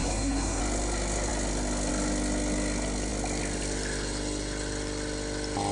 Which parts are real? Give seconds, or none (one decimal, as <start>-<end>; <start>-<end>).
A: 0.6-5.7

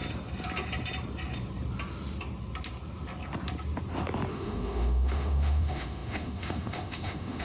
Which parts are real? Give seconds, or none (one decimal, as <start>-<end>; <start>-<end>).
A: 0.0-4.3